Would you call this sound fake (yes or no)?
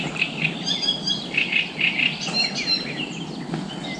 no